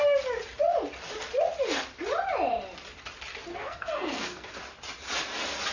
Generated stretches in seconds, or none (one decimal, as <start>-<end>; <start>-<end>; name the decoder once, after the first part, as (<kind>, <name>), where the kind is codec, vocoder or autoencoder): 3.5-4.6 (codec, SNAC)